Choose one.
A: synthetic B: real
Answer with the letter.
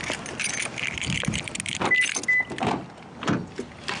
B